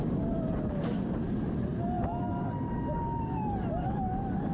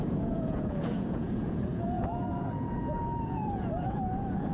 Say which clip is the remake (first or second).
second